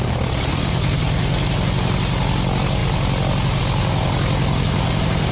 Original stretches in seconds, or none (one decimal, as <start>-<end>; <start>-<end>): 0.0-5.3